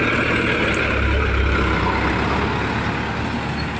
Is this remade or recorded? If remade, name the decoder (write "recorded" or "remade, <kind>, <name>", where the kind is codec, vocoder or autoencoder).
recorded